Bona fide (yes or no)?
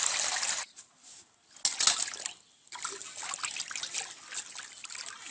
yes